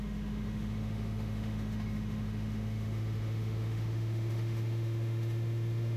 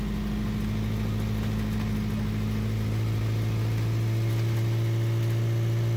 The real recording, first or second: second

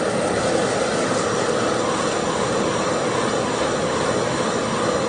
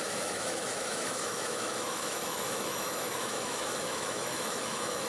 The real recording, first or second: first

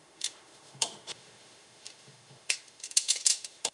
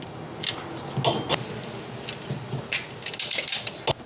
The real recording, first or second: second